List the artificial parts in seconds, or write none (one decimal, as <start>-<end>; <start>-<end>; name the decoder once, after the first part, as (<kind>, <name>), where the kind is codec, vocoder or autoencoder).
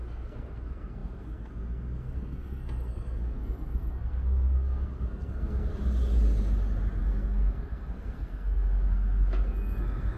0.0-5.7 (codec, SNAC); 7.0-10.2